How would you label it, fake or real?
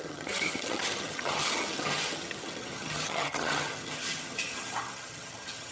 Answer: fake